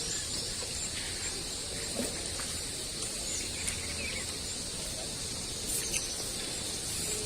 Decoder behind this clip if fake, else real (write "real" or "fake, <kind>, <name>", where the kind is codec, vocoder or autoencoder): real